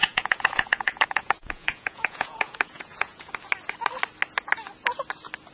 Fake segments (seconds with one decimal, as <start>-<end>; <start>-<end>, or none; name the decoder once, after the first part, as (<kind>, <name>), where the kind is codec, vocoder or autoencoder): 0.0-3.3 (vocoder, Vocos)